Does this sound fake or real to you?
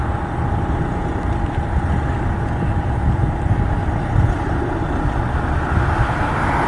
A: real